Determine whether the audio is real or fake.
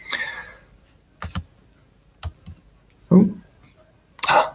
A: real